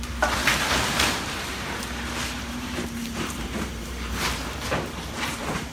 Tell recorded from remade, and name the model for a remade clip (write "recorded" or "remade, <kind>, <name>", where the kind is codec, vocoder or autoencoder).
remade, vocoder, BigVGAN v2